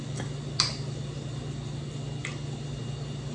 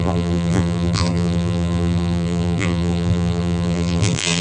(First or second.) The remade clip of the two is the second